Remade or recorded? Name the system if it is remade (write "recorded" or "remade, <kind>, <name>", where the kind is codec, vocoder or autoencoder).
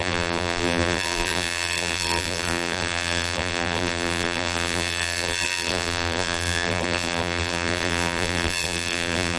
remade, vocoder, BigVGAN v2